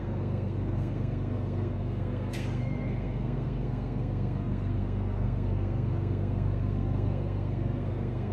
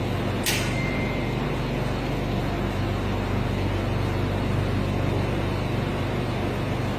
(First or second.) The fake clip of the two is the first